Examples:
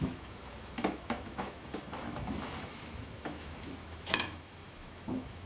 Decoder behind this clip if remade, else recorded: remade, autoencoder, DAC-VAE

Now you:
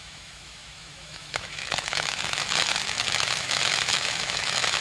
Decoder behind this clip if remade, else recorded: remade, autoencoder, DAC-VAE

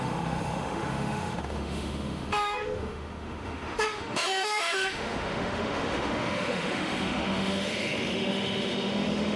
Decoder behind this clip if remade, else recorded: remade, autoencoder, DAC-VAE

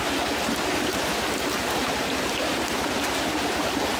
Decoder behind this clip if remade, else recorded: recorded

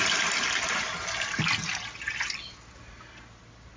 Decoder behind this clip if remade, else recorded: recorded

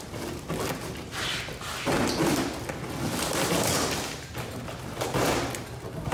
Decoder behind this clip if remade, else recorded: recorded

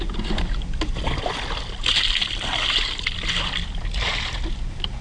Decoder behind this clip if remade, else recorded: recorded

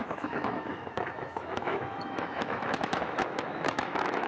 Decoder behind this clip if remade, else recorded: remade, autoencoder, DAC-VAE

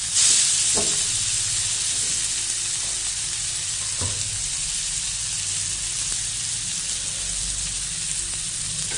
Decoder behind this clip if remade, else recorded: recorded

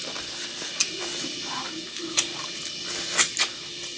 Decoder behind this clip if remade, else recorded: recorded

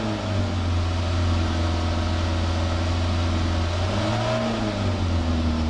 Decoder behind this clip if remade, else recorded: recorded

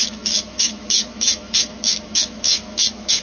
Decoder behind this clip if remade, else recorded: remade, autoencoder, DAC-VAE